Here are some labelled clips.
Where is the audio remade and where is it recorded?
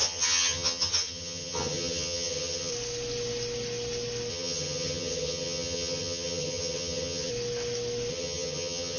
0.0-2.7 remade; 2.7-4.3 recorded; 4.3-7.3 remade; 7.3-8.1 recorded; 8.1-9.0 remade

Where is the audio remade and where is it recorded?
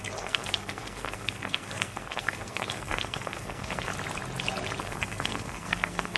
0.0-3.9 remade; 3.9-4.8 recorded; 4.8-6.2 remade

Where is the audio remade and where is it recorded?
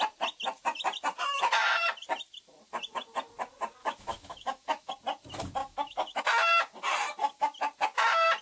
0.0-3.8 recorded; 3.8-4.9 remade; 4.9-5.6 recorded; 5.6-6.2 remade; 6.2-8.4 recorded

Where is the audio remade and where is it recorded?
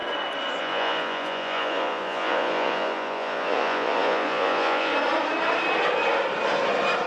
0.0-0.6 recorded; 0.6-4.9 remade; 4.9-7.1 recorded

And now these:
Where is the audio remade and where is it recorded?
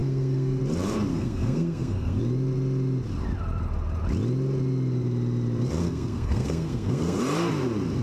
0.0-0.6 remade; 0.6-1.1 recorded; 1.1-2.2 remade; 2.2-5.8 recorded; 5.8-7.2 remade; 7.2-8.0 recorded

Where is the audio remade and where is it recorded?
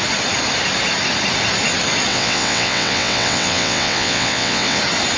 0.0-2.1 recorded; 2.1-4.8 remade; 4.8-5.2 recorded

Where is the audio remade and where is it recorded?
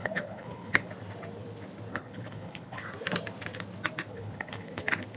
0.0-0.9 remade; 0.9-1.9 recorded; 1.9-2.8 remade; 2.8-4.1 recorded; 4.1-4.8 remade; 4.8-5.2 recorded